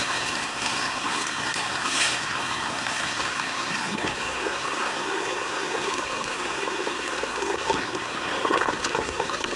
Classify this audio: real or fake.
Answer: fake